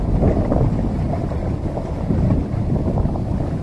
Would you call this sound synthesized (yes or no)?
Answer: no